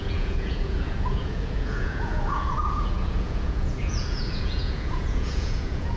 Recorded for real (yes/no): no